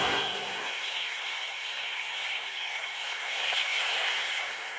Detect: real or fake fake